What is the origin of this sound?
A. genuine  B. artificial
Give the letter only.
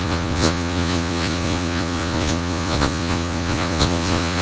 B